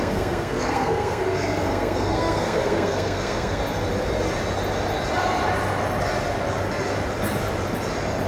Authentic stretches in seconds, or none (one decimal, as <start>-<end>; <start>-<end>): 3.6-8.3